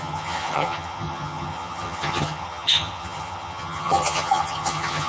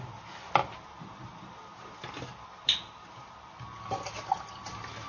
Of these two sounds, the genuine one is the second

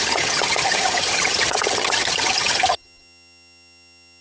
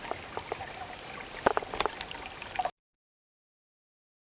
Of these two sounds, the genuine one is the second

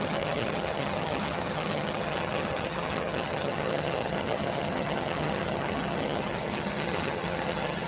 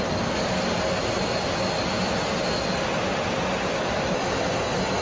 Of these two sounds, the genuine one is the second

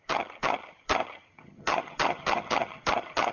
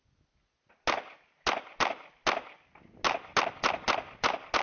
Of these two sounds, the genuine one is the second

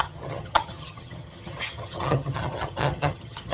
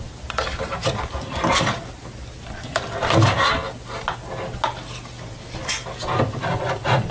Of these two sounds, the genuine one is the second